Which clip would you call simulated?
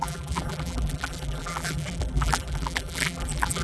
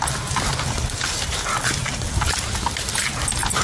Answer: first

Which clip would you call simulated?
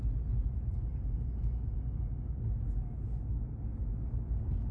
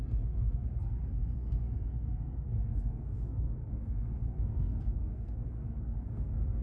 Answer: second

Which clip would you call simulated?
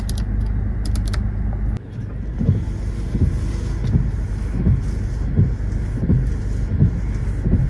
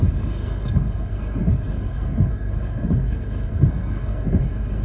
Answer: second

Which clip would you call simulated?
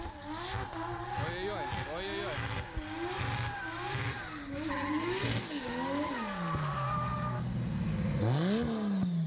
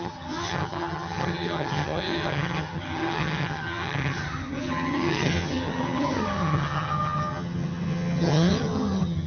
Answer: second